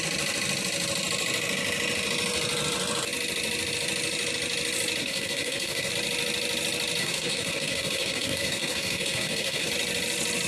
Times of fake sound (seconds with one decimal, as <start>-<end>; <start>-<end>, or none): 5.0-5.9; 7.0-9.7